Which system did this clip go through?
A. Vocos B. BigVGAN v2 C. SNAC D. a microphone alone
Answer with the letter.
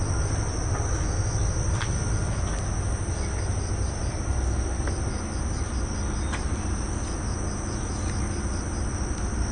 D